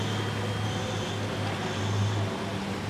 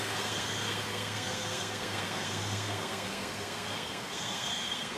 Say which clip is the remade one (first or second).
second